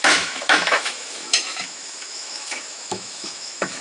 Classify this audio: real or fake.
fake